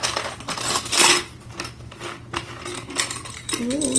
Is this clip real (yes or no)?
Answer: yes